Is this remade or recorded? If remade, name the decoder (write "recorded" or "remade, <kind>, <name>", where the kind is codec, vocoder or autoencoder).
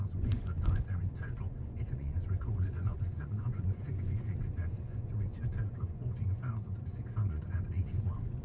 remade, vocoder, Vocos